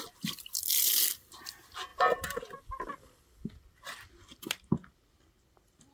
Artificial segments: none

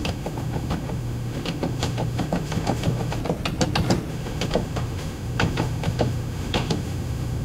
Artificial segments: 0.0-3.2 (autoencoder, DAC-VAE); 4.1-7.4

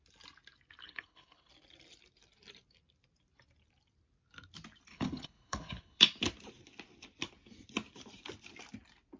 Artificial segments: 0.8-1.5 (codec, HILCodec); 4.9-6.0

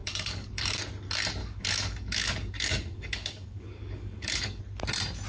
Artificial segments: 0.0-0.8 (codec, DAC); 1.4-4.6

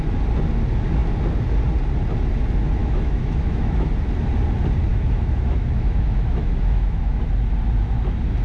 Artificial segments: 2.8-3.9 (autoencoder, DAC-VAE); 4.9-7.2

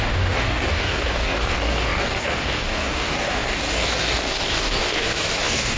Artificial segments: 0.0-5.8 (codec, DAC)

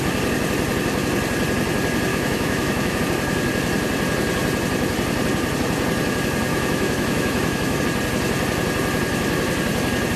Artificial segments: 2.1-3.0 (autoencoder, DAC-VAE); 6.5-7.8